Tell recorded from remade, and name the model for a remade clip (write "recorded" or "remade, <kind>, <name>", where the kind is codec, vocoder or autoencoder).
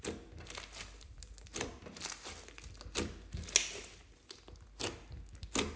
recorded